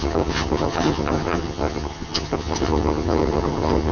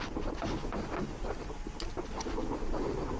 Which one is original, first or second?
second